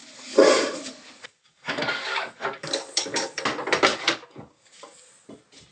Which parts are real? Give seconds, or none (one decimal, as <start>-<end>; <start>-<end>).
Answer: 3.4-3.9; 5.1-5.7